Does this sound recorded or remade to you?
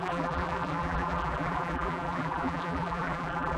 remade